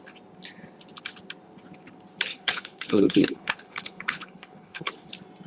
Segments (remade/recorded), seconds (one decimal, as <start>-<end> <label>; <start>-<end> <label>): 0.0-2.3 recorded; 2.3-5.1 remade; 5.1-5.5 recorded